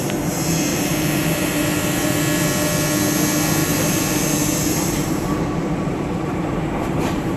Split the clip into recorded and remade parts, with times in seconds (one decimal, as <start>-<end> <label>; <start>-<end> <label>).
0.0-0.7 recorded; 0.7-2.2 remade; 2.2-3.6 recorded; 3.6-6.8 remade; 6.8-7.4 recorded